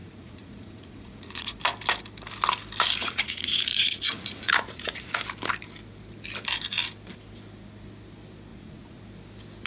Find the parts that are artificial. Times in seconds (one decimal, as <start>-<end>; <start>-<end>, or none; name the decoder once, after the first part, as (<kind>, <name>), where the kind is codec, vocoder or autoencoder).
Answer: 0.0-1.6 (vocoder, Vocos); 3.0-5.2; 8.5-9.0